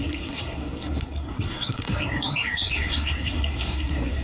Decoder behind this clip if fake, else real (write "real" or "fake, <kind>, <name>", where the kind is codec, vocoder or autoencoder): fake, codec, SNAC